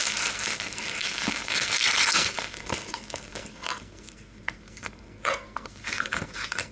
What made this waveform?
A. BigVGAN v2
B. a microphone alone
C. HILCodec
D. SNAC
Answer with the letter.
D